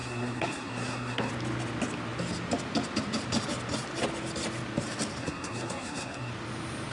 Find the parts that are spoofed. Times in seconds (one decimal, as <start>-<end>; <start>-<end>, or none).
0.0-1.3; 5.2-6.3